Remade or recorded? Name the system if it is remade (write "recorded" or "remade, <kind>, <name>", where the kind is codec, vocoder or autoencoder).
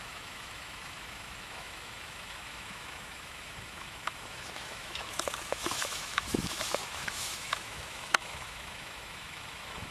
remade, autoencoder, DAC-VAE